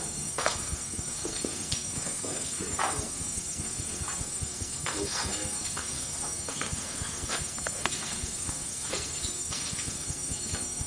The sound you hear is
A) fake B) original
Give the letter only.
A